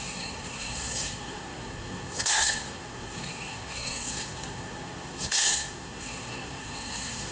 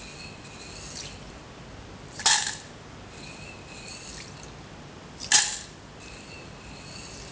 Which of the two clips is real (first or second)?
second